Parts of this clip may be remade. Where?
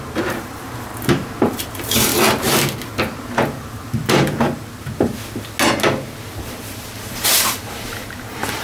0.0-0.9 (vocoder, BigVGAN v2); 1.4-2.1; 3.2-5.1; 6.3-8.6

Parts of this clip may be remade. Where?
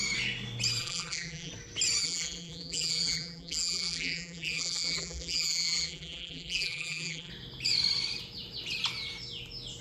0.8-1.5 (vocoder, BigVGAN v2); 2.0-7.3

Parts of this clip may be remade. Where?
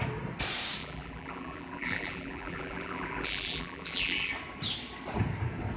0.8-4.3 (vocoder, BigVGAN v2)